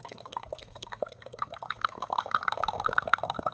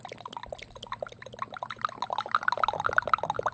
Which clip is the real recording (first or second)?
second